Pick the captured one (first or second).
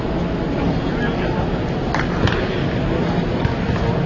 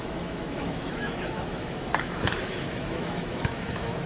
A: first